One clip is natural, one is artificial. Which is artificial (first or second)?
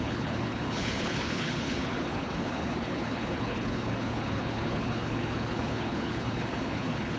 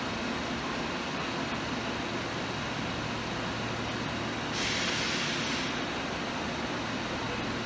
first